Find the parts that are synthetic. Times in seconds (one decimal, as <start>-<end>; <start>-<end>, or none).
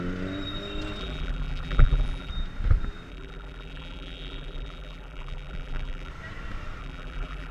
1.0-2.3; 3.1-6.1; 6.8-7.5